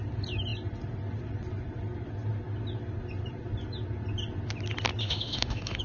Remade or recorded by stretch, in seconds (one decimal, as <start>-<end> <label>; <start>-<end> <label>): 0.0-5.0 recorded; 5.0-5.8 remade